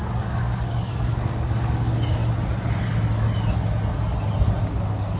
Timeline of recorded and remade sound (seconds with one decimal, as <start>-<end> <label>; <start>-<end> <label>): 0.0-2.2 remade; 2.2-4.6 recorded; 4.6-5.2 remade